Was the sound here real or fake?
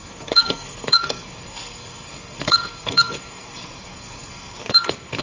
fake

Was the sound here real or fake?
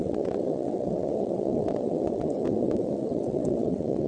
fake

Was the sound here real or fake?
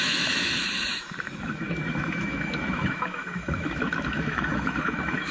fake